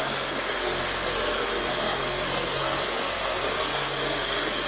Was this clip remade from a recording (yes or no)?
yes